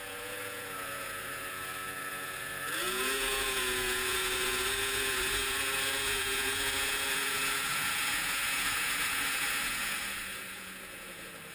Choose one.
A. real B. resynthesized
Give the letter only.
B